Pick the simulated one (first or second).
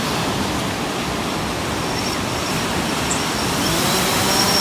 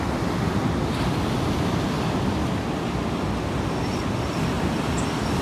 first